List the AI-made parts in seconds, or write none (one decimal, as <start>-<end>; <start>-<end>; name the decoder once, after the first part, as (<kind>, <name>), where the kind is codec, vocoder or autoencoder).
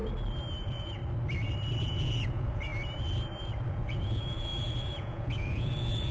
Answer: 0.6-1.0 (vocoder, Vocos); 1.8-2.7; 3.7-6.1